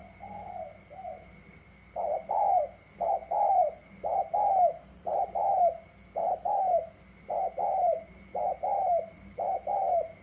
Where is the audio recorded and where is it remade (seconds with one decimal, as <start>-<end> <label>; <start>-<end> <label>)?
0.0-10.2 recorded